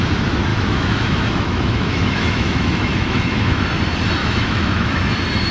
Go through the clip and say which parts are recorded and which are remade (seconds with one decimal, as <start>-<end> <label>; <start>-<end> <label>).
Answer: 0.0-0.5 recorded; 0.5-3.6 remade; 3.6-4.2 recorded; 4.2-5.0 remade; 5.0-5.5 recorded